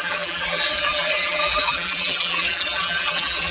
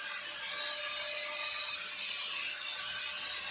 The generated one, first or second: first